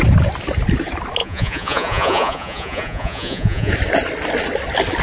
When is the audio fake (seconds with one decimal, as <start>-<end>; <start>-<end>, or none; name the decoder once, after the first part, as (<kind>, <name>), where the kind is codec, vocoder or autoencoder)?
1.2-3.7 (vocoder, Vocos)